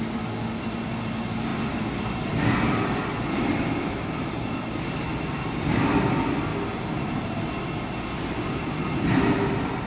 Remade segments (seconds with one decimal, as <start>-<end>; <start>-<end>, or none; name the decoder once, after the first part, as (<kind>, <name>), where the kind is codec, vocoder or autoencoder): 0.0-6.5 (vocoder, BigVGAN v2); 9.1-9.9